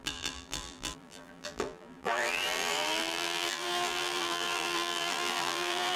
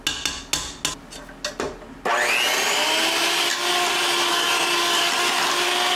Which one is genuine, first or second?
second